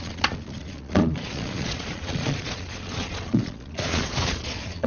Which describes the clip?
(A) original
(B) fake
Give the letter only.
B